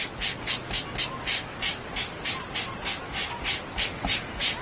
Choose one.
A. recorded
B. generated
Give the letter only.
A